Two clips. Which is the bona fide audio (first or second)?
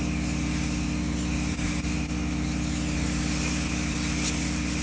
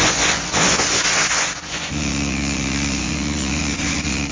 first